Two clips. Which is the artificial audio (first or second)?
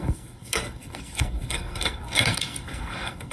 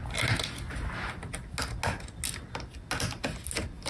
first